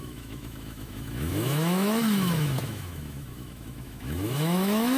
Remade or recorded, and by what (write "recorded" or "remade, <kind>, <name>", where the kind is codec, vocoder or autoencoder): remade, autoencoder, DAC-VAE